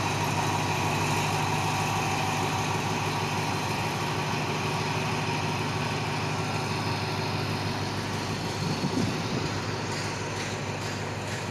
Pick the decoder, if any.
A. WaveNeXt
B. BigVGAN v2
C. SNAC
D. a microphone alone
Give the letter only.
D